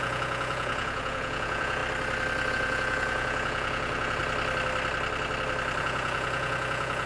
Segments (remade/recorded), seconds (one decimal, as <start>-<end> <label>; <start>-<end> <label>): 0.0-1.8 remade; 1.8-2.5 recorded; 2.5-4.2 remade; 4.2-5.8 recorded; 5.8-7.1 remade